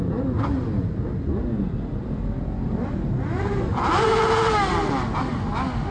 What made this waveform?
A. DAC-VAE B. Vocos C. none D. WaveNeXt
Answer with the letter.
C